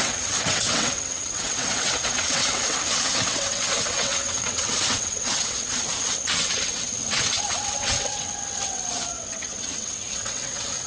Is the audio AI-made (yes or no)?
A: yes